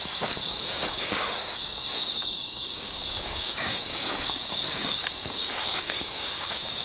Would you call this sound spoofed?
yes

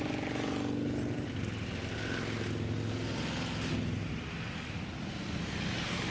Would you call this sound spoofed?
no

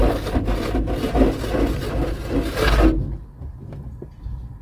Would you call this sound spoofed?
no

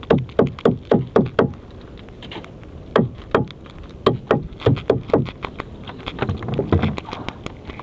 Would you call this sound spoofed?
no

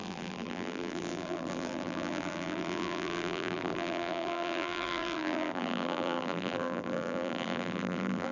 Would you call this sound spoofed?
yes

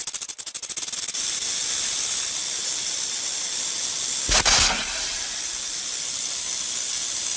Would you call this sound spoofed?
no